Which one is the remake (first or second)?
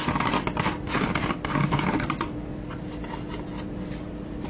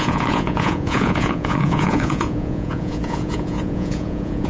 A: second